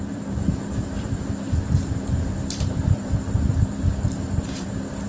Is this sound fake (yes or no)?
yes